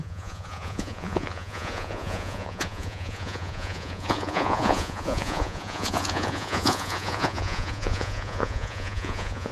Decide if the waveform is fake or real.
fake